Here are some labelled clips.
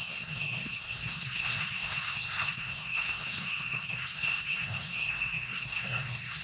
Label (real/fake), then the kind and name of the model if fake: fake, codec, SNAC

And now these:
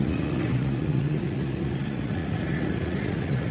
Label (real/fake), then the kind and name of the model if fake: fake, vocoder, Vocos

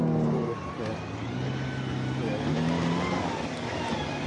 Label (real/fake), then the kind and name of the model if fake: real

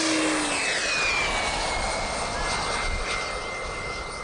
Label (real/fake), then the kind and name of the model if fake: real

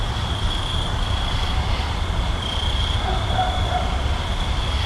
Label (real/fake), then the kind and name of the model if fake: fake, vocoder, BigVGAN v2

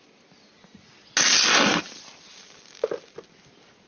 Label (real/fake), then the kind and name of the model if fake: real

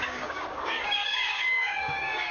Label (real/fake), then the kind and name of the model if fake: fake, codec, DAC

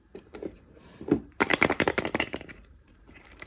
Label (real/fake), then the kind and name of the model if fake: fake, vocoder, BigVGAN v2